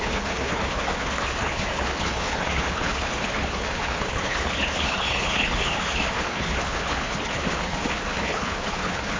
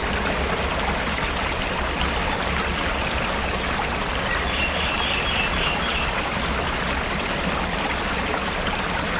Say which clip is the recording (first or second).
second